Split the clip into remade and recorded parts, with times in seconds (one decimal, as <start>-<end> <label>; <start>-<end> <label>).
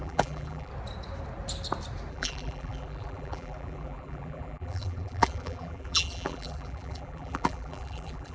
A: 0.0-0.7 remade; 0.7-2.1 recorded; 2.1-8.3 remade